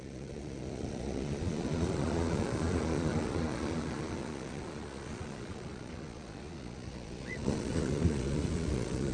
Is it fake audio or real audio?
fake